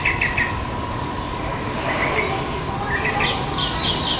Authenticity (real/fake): real